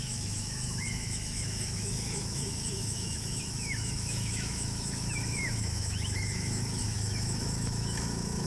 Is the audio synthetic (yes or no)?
yes